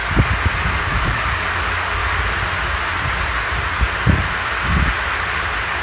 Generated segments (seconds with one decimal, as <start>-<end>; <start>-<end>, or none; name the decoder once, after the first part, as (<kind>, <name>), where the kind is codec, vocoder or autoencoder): 0.8-2.0 (codec, DAC)